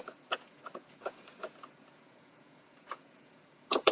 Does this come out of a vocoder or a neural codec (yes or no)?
yes